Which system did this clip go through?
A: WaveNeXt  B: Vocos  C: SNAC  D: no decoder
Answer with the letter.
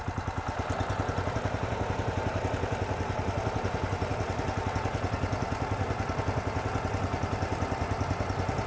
D